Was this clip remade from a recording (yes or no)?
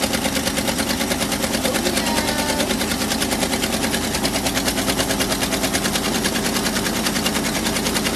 no